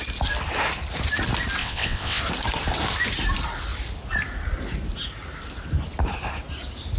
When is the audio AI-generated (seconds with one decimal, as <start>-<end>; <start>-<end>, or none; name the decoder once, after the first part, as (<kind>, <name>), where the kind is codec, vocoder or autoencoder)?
1.6-2.2 (vocoder, WaveNeXt)